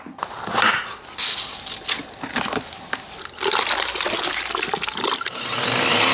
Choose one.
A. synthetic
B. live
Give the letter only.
B